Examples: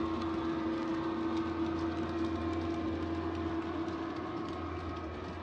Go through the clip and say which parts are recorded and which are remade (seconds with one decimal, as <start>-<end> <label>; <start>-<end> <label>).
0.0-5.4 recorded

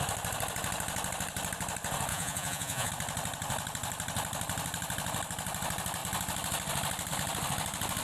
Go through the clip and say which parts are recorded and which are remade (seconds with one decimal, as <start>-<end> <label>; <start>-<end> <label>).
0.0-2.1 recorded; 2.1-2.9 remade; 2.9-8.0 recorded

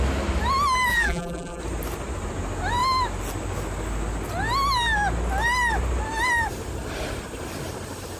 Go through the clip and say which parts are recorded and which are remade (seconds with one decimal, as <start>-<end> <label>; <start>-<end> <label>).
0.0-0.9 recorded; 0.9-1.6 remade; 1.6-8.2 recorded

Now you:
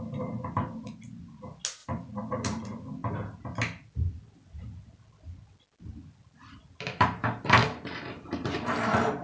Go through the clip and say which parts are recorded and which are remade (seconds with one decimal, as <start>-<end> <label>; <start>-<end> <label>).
0.0-9.2 recorded

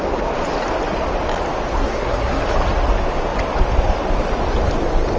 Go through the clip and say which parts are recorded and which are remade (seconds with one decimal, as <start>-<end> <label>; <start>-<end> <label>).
0.0-1.8 recorded; 1.8-2.4 remade; 2.4-5.2 recorded